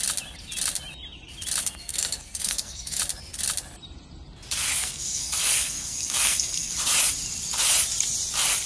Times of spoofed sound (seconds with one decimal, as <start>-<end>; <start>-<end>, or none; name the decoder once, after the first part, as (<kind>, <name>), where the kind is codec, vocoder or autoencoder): 1.6-3.0 (codec, SNAC); 4.8-6.7